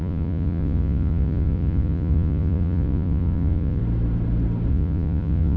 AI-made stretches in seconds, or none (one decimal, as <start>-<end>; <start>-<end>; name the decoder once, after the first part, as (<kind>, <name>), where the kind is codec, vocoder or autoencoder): 0.0-3.8 (vocoder, Vocos); 4.7-5.6